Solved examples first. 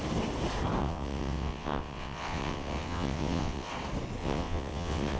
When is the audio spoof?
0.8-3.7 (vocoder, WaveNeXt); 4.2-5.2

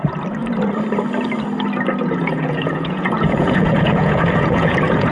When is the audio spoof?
2.0-5.1 (vocoder, Vocos)